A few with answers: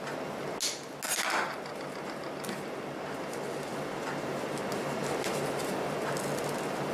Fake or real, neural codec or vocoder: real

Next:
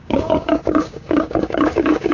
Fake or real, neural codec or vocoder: fake, codec, DAC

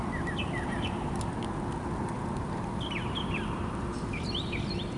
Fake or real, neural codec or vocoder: real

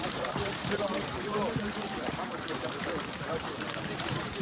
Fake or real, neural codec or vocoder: fake, vocoder, BigVGAN v2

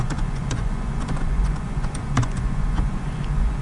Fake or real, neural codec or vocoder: fake, vocoder, Vocos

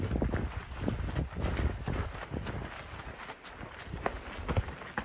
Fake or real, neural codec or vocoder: real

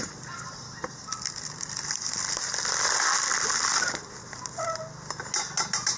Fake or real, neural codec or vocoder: real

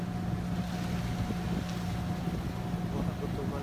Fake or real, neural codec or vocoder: real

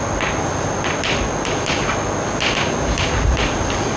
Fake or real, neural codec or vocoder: real